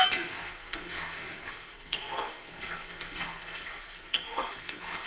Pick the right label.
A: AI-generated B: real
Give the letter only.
A